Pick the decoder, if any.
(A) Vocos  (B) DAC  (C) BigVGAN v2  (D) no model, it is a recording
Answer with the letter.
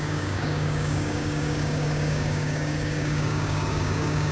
B